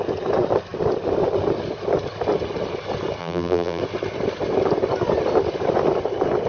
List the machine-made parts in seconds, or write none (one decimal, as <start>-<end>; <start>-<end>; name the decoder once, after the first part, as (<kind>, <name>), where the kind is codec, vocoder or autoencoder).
3.2-3.8 (vocoder, BigVGAN v2)